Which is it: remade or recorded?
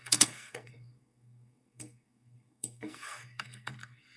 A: remade